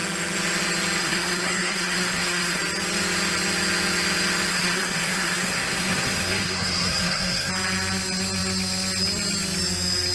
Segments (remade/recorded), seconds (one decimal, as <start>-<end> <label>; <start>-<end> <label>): 0.0-1.0 recorded; 1.0-2.6 remade; 2.6-4.5 recorded; 4.5-7.5 remade; 7.5-10.1 recorded